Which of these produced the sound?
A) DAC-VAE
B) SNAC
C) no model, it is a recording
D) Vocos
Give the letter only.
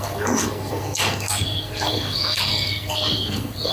B